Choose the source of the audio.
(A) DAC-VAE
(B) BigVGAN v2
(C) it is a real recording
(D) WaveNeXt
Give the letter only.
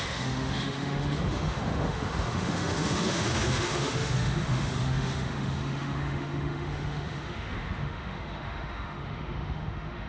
A